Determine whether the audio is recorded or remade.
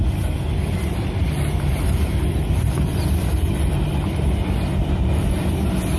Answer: recorded